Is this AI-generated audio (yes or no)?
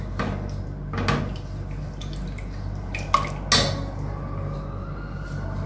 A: no